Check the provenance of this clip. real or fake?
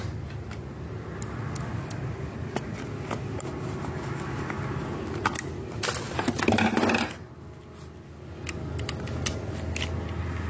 real